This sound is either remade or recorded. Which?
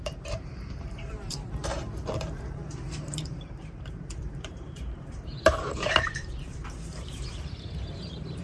remade